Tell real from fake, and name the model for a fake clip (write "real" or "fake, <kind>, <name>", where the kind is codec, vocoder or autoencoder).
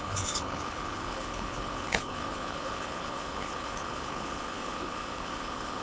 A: fake, codec, HILCodec